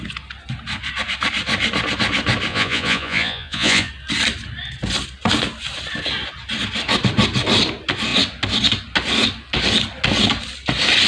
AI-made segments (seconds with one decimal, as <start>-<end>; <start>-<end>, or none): 2.5-3.9